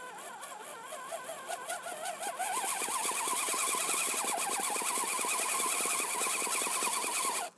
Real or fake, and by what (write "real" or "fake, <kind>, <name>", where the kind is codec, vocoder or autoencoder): real